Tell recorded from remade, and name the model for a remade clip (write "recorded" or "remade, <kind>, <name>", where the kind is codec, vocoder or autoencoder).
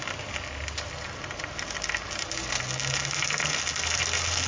recorded